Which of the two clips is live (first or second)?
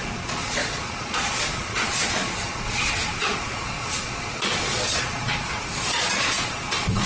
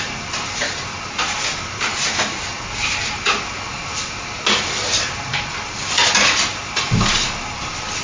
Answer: second